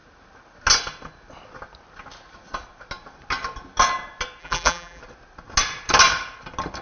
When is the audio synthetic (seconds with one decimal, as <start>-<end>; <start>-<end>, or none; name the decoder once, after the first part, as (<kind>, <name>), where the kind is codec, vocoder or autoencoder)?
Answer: 4.4-5.0 (vocoder, BigVGAN v2)